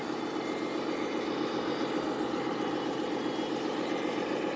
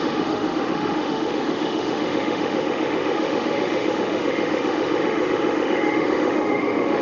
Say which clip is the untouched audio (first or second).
first